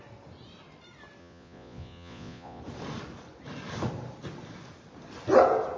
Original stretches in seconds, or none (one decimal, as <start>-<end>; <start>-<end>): 0.0-1.2; 2.6-5.8